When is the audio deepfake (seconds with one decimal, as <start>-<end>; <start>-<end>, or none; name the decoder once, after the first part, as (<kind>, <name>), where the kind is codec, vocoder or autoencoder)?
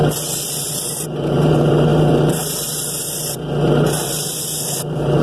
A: 1.9-5.2 (vocoder, BigVGAN v2)